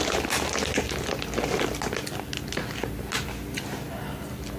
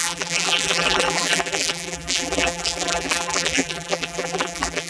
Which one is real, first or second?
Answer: first